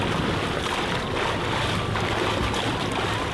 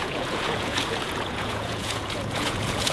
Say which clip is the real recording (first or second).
first